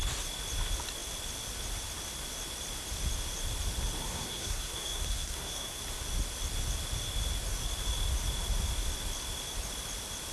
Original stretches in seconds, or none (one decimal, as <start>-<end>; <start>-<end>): 0.0-4.0; 5.8-10.3